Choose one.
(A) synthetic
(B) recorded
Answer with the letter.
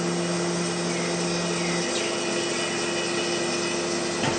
B